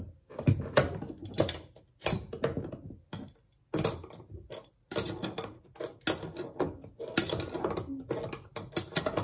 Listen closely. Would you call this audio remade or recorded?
recorded